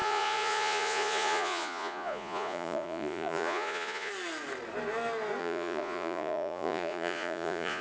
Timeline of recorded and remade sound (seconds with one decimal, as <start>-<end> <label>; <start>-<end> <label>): 0.0-4.1 remade; 4.1-5.4 recorded; 5.4-7.8 remade